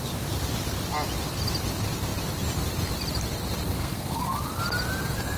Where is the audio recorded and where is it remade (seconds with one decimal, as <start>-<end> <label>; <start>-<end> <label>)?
0.0-3.8 recorded; 3.8-4.4 remade; 4.4-5.4 recorded